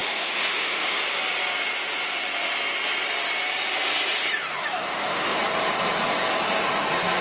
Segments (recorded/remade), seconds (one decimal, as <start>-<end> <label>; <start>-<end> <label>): 0.0-1.0 remade; 1.0-4.6 recorded; 4.6-5.4 remade; 5.4-7.2 recorded